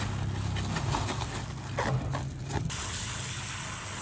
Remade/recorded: recorded